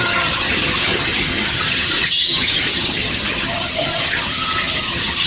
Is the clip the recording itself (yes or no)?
no